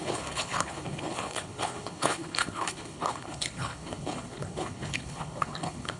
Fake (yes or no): yes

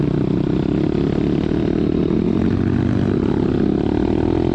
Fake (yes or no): no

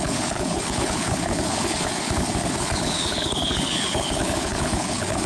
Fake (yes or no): yes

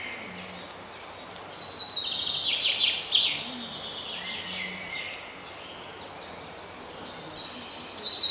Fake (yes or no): no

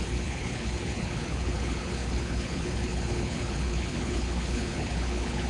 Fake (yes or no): yes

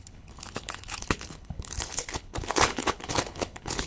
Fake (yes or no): yes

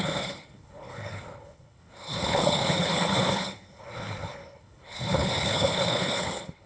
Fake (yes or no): yes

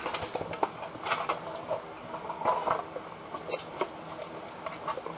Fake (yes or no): no